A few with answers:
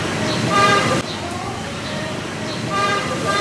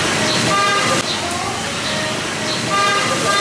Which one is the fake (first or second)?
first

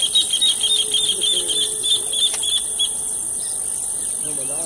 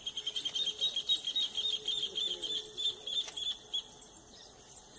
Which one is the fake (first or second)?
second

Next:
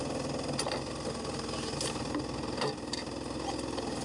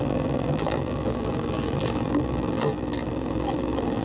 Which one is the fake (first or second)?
second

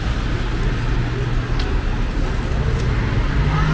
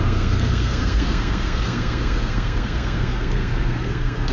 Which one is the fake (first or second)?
second